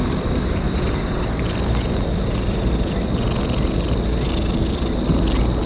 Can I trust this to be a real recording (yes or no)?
yes